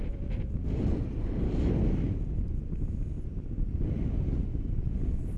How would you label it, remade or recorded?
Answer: recorded